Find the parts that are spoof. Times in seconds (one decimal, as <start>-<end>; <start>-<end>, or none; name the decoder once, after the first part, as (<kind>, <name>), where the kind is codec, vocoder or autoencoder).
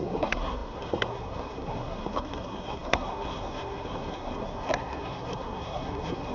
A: 0.0-6.3 (codec, SNAC)